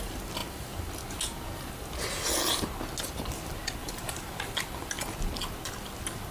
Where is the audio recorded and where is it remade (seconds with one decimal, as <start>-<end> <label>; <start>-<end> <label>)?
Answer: 0.0-3.8 recorded; 3.8-4.5 remade; 4.5-6.3 recorded